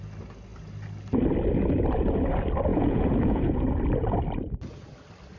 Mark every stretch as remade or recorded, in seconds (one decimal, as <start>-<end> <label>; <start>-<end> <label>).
0.0-2.7 recorded; 2.7-3.7 remade; 3.7-5.4 recorded